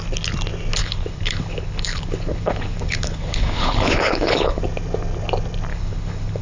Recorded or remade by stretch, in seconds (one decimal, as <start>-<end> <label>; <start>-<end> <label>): 0.0-0.8 recorded; 0.8-4.6 remade; 4.6-5.7 recorded; 5.7-6.4 remade